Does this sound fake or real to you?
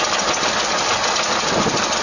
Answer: real